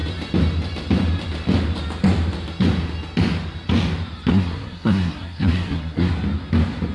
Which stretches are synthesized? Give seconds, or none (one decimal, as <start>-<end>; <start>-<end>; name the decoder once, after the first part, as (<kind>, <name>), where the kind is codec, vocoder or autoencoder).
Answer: 4.3-6.1 (codec, SNAC)

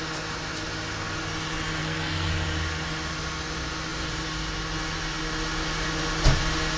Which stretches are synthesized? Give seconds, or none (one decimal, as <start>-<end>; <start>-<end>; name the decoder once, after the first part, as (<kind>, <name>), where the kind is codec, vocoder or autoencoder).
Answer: 1.8-2.3 (codec, SNAC)